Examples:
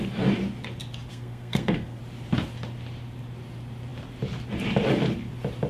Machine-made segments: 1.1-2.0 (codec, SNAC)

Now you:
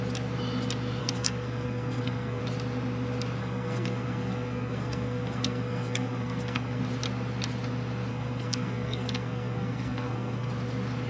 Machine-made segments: 1.0-2.4 (codec, SNAC); 3.4-6.8; 8.1-10.5

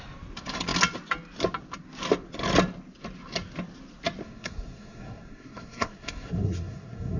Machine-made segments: 4.2-7.2 (codec, SNAC)

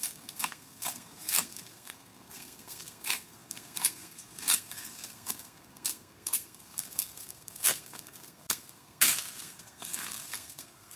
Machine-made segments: 0.0-11.0 (codec, SNAC)

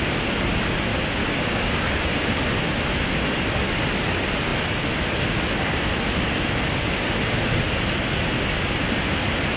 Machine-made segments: 1.2-2.3 (codec, DAC)

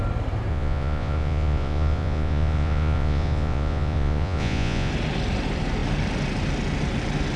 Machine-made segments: 0.5-4.9 (vocoder, Vocos)